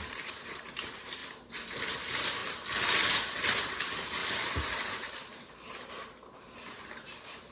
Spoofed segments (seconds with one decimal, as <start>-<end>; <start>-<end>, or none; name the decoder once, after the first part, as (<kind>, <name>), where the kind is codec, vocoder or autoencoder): 0.0-1.2 (vocoder, BigVGAN v2); 1.9-2.4; 3.6-7.5